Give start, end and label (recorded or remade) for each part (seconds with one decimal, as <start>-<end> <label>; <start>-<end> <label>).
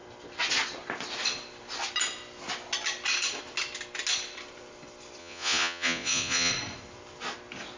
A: 0.0-5.2 recorded; 5.2-6.5 remade; 6.5-7.8 recorded